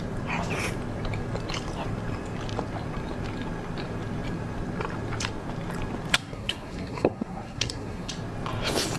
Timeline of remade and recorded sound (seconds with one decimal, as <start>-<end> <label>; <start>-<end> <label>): 0.0-6.1 recorded; 6.1-8.1 remade; 8.1-9.0 recorded